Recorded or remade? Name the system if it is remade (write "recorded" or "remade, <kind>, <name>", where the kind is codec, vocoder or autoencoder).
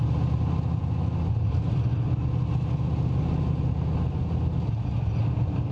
recorded